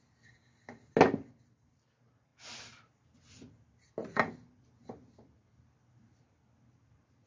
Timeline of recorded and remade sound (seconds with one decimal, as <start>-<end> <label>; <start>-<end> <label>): 0.0-7.3 recorded